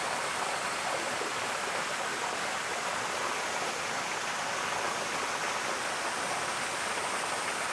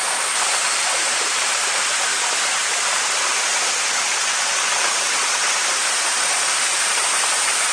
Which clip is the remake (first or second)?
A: second